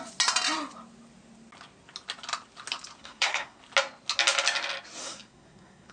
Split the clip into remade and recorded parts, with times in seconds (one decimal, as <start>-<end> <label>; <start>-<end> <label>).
0.0-3.0 recorded; 3.0-3.6 remade; 3.6-5.0 recorded; 5.0-5.9 remade

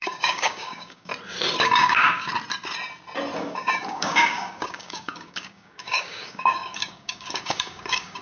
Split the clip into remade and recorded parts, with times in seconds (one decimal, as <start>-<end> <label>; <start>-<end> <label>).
0.0-1.1 remade; 1.1-1.6 recorded; 1.6-2.3 remade; 2.3-3.5 recorded; 3.5-8.2 remade

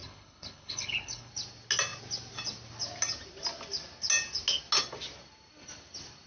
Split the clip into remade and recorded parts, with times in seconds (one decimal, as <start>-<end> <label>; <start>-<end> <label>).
0.0-1.3 remade; 1.3-6.3 recorded

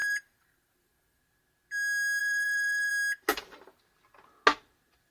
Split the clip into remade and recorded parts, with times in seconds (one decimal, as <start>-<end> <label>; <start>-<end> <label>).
0.0-1.2 remade; 1.2-2.2 recorded; 2.2-2.9 remade; 2.9-3.3 recorded; 3.3-3.8 remade; 3.8-5.1 recorded

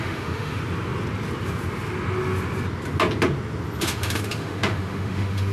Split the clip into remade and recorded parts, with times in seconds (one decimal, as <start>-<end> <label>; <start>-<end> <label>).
0.0-0.6 remade; 0.6-3.8 recorded; 3.8-5.5 remade

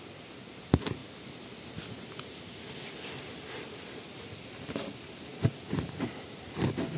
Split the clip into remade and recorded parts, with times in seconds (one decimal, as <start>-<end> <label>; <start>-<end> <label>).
0.0-7.0 recorded

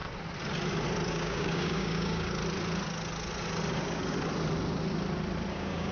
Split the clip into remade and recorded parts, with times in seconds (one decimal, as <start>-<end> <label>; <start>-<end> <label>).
0.0-1.1 recorded; 1.1-2.4 remade; 2.4-5.5 recorded; 5.5-5.9 remade

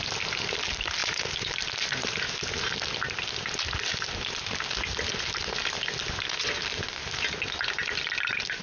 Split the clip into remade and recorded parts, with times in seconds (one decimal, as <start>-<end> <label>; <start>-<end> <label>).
0.0-8.6 recorded